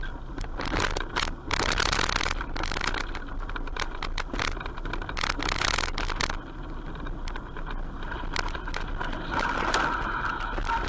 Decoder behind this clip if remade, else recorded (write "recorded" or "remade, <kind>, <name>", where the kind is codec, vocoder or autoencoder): recorded